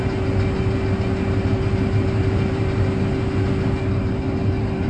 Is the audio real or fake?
real